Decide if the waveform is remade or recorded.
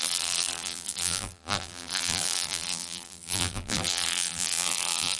remade